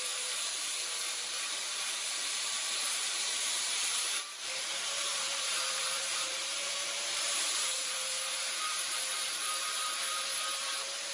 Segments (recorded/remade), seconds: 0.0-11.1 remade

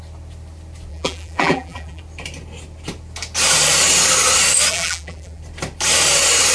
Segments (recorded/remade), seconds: 0.0-0.9 recorded; 0.9-2.0 remade; 2.0-4.7 recorded; 4.7-5.4 remade; 5.4-6.5 recorded

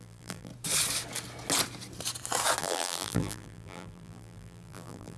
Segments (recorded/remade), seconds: 0.0-0.5 remade; 0.5-2.6 recorded; 2.6-5.2 remade

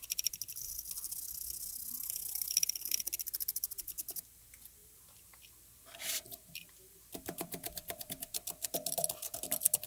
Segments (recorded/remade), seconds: 0.0-4.8 recorded; 4.8-5.4 remade; 5.4-9.9 recorded

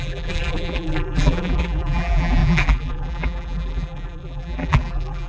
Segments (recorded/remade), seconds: 0.0-5.3 remade

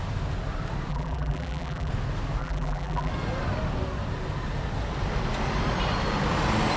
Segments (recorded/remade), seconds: 0.0-0.9 recorded; 0.9-1.9 remade; 1.9-2.4 recorded; 2.4-3.1 remade; 3.1-6.8 recorded

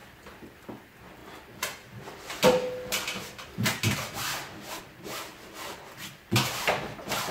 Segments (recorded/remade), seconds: 0.0-7.3 recorded

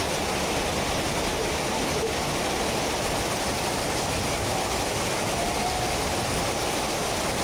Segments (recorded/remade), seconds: 0.0-7.4 recorded